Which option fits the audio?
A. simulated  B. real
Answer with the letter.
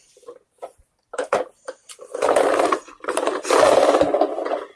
B